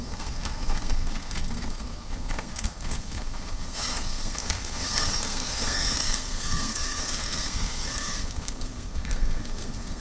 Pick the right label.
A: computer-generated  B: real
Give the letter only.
A